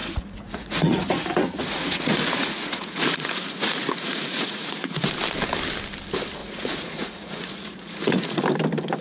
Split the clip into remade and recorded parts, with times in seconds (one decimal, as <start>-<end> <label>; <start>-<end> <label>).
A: 0.0-5.1 remade; 5.1-6.4 recorded; 6.4-8.4 remade; 8.4-9.0 recorded